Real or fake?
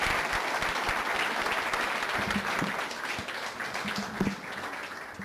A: real